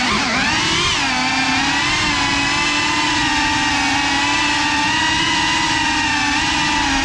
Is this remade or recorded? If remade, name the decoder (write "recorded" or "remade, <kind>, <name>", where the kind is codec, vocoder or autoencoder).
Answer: recorded